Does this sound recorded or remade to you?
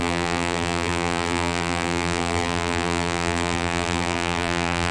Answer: remade